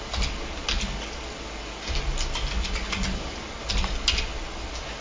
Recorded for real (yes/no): yes